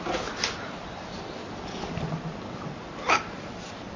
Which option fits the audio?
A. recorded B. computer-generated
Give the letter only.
A